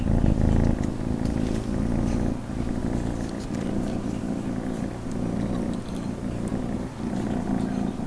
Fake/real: real